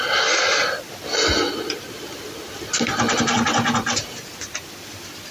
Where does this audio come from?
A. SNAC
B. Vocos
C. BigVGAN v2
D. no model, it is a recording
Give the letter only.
D